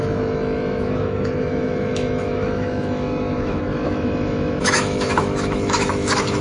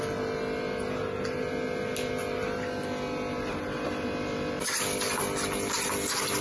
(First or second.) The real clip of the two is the second